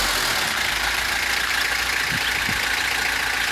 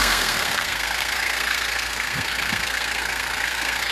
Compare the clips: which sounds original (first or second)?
first